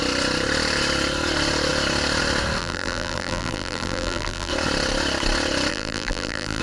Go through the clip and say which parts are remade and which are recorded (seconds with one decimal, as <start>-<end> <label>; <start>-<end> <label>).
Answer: 0.0-2.6 recorded; 2.6-4.5 remade; 4.5-5.7 recorded; 5.7-6.6 remade